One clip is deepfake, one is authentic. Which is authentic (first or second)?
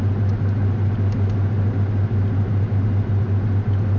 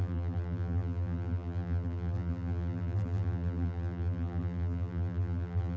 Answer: first